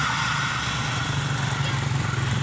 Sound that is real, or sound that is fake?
real